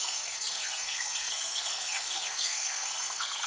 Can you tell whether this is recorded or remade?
remade